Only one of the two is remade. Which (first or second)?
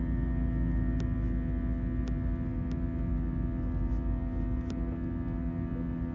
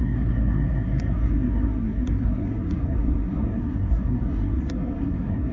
second